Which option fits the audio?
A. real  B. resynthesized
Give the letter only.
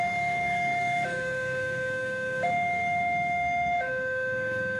B